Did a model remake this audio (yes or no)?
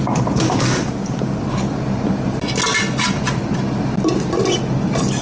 no